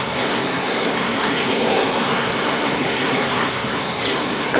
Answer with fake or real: fake